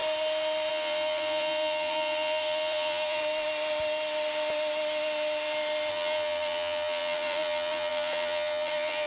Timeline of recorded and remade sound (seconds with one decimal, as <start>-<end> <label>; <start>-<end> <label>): 0.0-0.7 recorded; 0.7-3.2 remade; 3.2-5.9 recorded; 5.9-9.1 remade